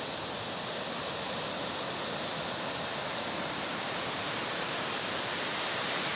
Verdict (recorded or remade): recorded